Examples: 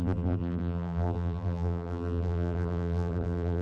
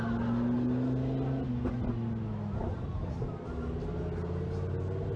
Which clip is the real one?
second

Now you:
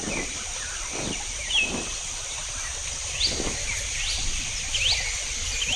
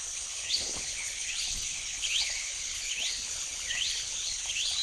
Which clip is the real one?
first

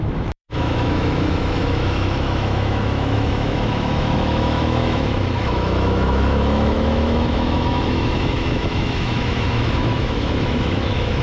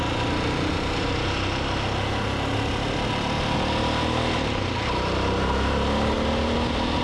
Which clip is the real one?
second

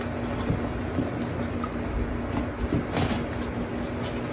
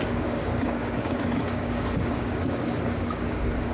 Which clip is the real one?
first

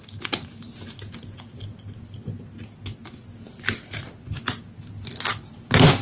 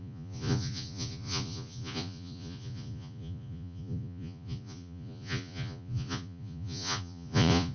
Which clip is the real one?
first